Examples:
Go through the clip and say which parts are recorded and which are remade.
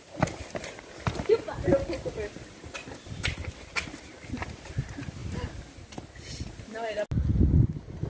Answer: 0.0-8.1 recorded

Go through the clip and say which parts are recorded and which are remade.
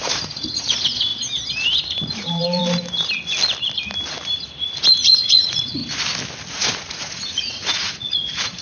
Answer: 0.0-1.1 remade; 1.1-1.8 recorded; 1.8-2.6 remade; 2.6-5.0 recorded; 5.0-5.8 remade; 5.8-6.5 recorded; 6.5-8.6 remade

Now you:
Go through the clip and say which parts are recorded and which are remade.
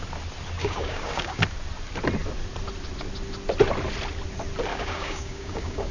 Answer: 0.0-0.6 recorded; 0.6-1.4 remade; 1.4-4.7 recorded; 4.7-5.9 remade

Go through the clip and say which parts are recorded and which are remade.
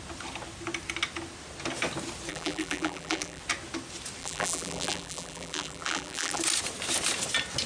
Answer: 0.0-2.3 recorded; 2.3-3.4 remade; 3.4-4.2 recorded; 4.2-6.4 remade; 6.4-7.7 recorded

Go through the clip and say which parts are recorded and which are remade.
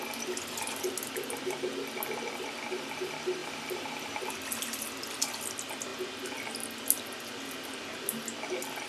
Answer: 0.0-3.4 recorded; 3.4-4.3 remade; 4.3-8.9 recorded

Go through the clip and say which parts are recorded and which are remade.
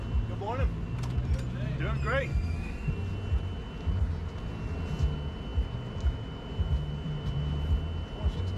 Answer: 0.0-2.3 recorded; 2.3-2.9 remade; 2.9-8.6 recorded